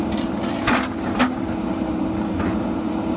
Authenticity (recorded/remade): recorded